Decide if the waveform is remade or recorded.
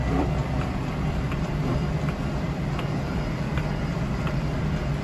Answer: remade